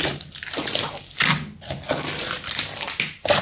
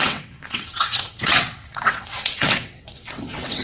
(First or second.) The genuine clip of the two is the first